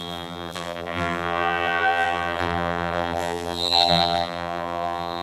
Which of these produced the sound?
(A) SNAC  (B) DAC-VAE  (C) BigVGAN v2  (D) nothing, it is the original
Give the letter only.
C